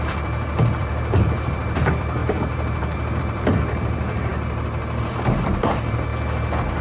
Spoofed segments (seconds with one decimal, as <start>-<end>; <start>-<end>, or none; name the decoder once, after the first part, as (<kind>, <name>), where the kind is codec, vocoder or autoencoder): 0.0-4.3 (vocoder, BigVGAN v2); 5.0-6.1

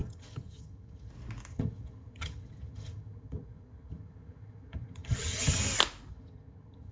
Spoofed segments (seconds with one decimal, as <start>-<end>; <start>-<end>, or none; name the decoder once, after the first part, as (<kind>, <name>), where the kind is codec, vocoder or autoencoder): 0.0-1.1 (vocoder, HiFi-GAN); 1.5-5.6; 6.1-6.9

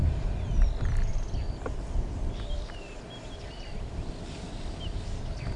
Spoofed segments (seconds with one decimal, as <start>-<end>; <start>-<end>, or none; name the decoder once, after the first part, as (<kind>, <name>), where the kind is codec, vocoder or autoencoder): 1.1-4.1 (vocoder, BigVGAN v2)

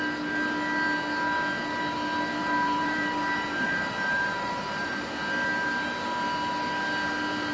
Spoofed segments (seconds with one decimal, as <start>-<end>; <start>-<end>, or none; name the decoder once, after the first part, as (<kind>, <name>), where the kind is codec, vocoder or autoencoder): 2.4-5.0 (vocoder, BigVGAN v2)

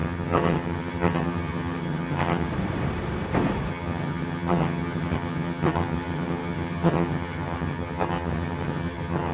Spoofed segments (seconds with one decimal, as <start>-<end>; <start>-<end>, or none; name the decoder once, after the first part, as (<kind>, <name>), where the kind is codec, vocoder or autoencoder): 0.0-2.5 (vocoder, HiFi-GAN); 3.7-9.3

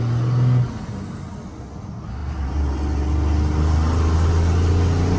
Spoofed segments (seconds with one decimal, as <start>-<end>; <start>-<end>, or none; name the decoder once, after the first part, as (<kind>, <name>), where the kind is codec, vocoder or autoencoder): none